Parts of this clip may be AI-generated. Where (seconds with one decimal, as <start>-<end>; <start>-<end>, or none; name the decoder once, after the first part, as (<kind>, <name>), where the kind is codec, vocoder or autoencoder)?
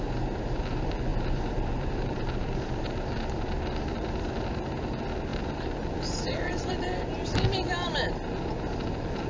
1.1-4.6 (vocoder, BigVGAN v2); 5.3-6.7